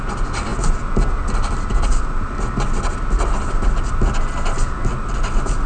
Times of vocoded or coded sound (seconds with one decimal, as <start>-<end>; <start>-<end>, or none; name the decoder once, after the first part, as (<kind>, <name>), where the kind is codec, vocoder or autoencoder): none